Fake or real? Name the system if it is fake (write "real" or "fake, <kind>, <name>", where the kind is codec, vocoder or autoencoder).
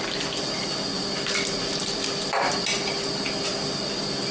real